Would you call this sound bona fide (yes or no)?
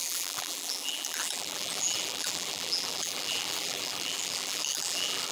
no